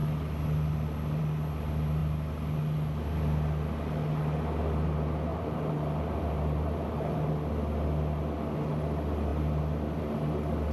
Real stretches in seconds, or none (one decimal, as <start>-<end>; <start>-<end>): 0.0-5.3; 7.3-10.7

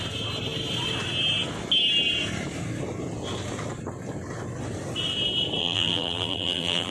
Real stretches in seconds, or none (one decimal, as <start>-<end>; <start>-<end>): 0.0-5.6

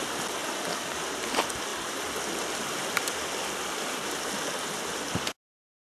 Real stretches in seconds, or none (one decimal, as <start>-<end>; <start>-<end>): 0.0-1.7; 4.0-5.9

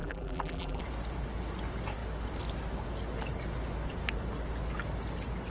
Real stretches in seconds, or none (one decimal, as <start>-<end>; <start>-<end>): 0.8-5.5

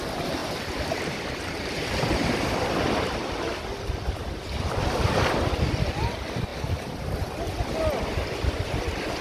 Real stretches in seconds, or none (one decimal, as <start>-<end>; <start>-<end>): 0.0-9.2

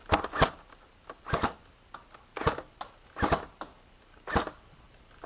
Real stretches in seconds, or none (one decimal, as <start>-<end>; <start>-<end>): 0.0-5.3

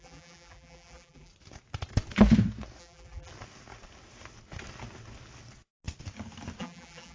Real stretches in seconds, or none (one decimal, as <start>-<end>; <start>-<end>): 1.3-2.8; 3.3-6.6

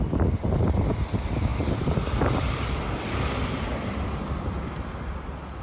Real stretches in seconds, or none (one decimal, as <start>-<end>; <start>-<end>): 0.0-5.6